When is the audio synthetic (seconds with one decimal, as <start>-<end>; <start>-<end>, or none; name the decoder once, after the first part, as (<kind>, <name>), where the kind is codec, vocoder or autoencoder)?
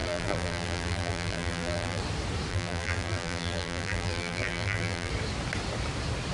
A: 0.0-2.0 (vocoder, BigVGAN v2); 2.5-5.1